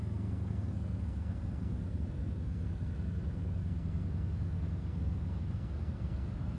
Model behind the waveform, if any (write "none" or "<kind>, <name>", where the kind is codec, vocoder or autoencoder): codec, SNAC